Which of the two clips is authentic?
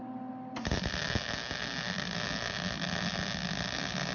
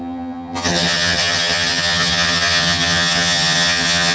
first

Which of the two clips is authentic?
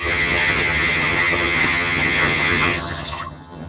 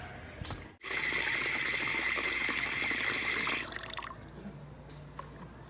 second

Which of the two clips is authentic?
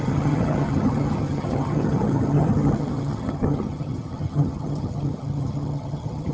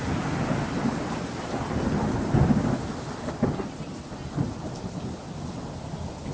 second